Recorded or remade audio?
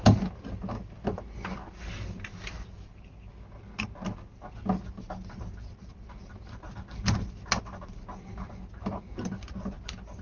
recorded